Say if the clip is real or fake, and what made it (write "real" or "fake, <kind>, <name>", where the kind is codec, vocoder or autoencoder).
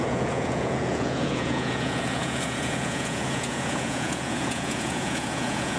fake, vocoder, Vocos